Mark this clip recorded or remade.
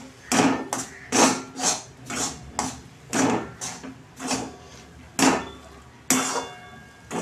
recorded